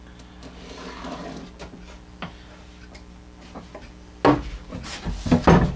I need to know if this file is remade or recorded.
recorded